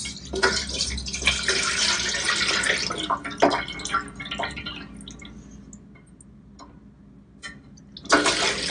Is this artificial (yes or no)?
no